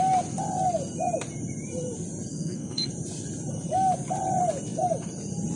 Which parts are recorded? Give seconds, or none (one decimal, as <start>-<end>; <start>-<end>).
0.0-2.3; 2.9-5.6